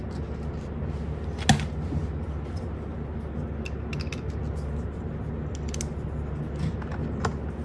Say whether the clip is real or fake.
real